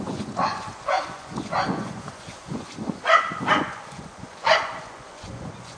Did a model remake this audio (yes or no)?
yes